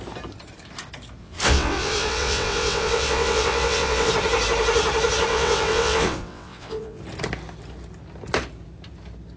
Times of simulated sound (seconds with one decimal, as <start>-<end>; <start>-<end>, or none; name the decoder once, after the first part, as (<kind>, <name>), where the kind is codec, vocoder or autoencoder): 1.2-4.1 (vocoder, WaveNeXt); 5.3-7.0